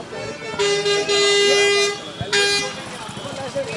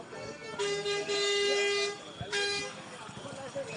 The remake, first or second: second